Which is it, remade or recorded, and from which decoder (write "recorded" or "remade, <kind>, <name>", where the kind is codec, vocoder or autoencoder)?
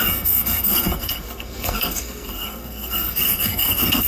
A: remade, codec, SNAC